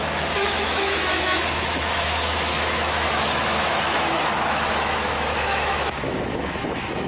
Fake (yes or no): yes